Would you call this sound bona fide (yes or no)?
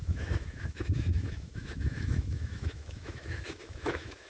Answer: no